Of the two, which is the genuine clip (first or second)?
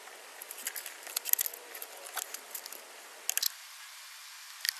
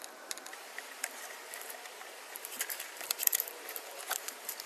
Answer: first